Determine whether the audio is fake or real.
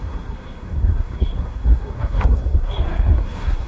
fake